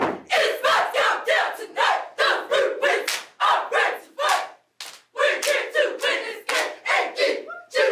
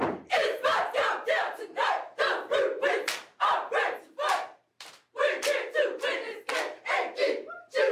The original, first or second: first